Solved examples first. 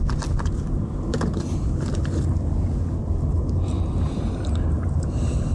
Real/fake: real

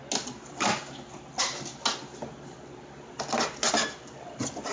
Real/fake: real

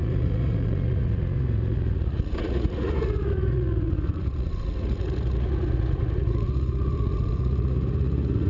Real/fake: fake